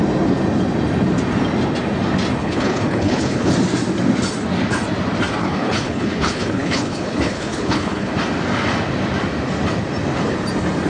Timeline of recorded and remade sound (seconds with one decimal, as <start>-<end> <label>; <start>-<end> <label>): 0.0-2.4 recorded; 2.4-3.5 remade; 3.5-5.4 recorded; 5.4-8.1 remade; 8.1-10.9 recorded